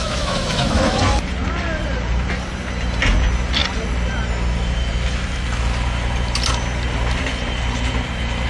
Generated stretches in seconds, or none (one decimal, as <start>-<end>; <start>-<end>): 0.0-1.0